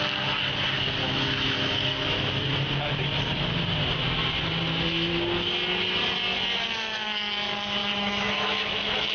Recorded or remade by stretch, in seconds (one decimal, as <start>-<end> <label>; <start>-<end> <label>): 0.0-1.0 recorded; 1.0-2.2 remade; 2.2-7.8 recorded; 7.8-9.1 remade